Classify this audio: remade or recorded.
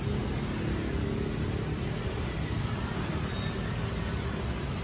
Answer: recorded